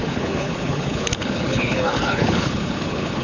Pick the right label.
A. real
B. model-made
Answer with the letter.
B